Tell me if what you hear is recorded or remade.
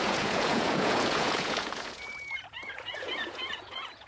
remade